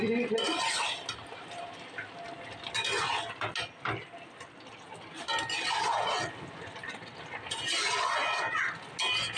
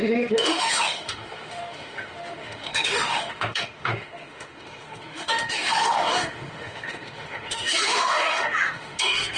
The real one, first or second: first